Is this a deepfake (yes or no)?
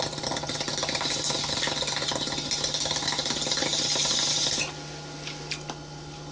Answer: no